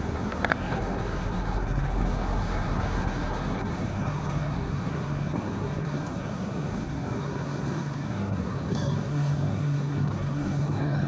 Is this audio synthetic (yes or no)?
yes